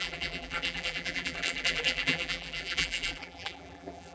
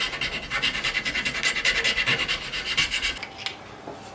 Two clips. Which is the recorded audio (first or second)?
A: second